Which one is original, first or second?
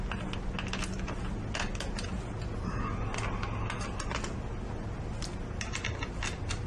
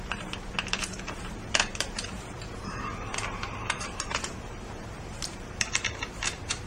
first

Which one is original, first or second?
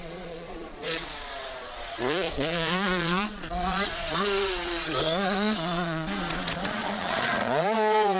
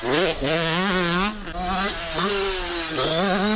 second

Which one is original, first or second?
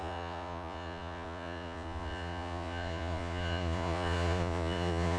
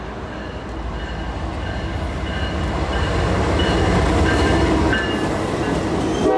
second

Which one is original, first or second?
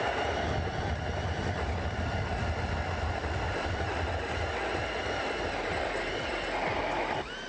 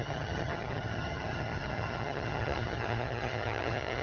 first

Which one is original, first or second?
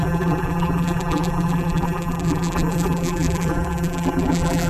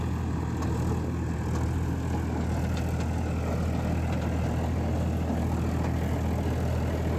second